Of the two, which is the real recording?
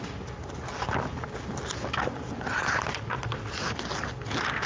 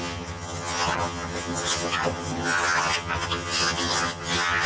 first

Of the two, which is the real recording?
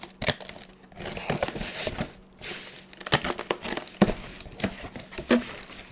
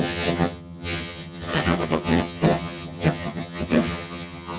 first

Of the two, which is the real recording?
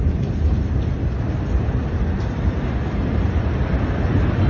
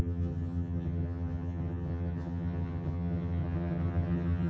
first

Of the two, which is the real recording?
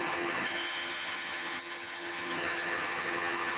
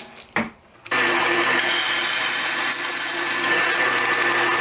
second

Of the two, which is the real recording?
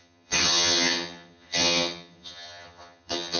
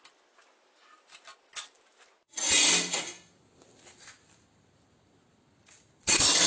second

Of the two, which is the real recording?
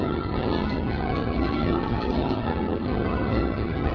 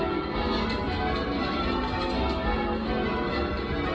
second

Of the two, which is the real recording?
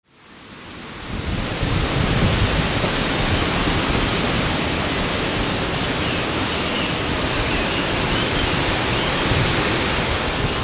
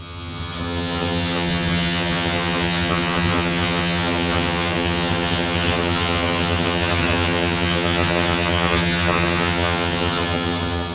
first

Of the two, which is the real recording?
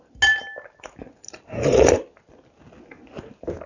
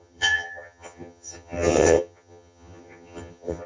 first